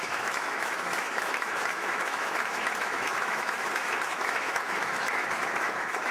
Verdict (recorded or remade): remade